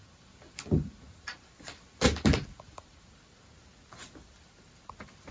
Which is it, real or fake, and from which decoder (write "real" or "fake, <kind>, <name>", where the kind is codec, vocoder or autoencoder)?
real